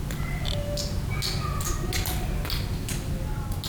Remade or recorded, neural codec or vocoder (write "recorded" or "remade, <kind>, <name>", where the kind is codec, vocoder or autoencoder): recorded